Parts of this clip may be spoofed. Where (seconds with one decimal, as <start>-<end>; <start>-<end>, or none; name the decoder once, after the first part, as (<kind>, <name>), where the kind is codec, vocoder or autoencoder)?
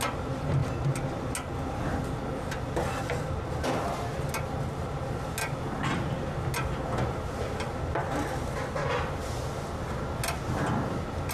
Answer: none